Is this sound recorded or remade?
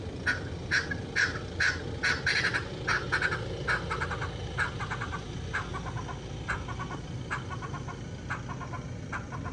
recorded